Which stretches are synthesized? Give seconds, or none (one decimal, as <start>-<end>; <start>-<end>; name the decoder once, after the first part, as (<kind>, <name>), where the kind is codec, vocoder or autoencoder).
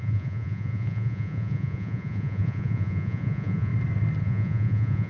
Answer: 0.0-3.7 (vocoder, Vocos); 4.2-5.1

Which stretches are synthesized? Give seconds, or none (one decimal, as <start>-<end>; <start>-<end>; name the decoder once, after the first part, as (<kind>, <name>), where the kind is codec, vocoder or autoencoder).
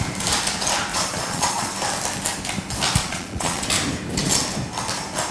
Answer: 0.9-1.7 (vocoder, Vocos); 3.0-3.6